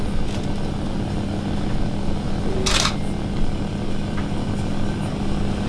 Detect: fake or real real